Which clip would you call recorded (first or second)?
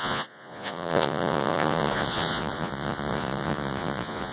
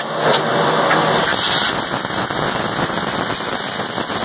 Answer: second